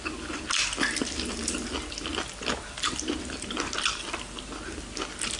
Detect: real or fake real